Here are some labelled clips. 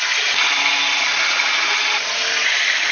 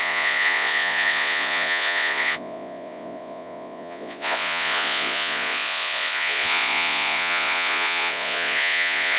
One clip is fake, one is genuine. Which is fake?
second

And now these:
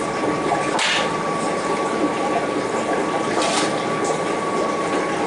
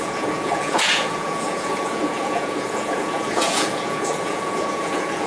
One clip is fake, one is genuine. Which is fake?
second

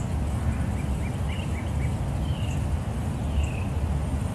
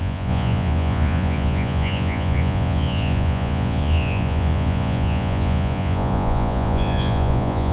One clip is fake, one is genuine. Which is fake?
second